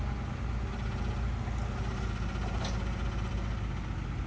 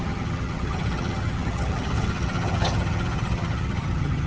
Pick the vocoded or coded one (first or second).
second